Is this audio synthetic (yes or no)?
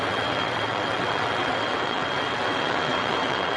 yes